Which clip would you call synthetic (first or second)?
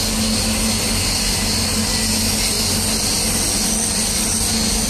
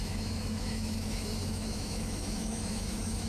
second